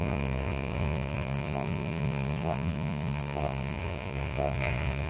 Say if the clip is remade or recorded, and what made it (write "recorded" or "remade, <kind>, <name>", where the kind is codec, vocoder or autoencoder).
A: remade, vocoder, Vocos